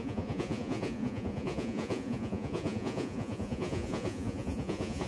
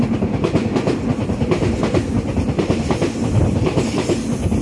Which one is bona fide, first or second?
second